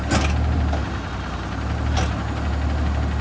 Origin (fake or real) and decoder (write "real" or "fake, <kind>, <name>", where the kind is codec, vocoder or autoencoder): real